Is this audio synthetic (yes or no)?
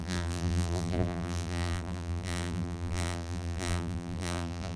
yes